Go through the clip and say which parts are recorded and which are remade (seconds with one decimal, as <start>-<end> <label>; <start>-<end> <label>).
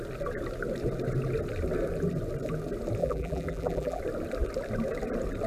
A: 0.0-3.0 recorded; 3.0-4.0 remade; 4.0-5.5 recorded